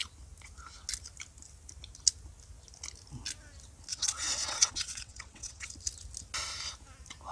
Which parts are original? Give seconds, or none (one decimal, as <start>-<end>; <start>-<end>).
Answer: 0.0-3.9; 5.7-7.3

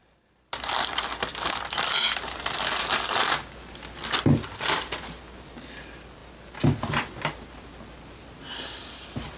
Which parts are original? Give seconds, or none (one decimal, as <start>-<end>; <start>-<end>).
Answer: 0.0-9.4

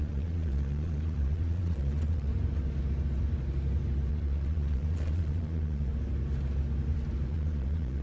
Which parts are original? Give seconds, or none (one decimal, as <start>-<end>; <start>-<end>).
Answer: 2.3-4.1; 5.9-7.3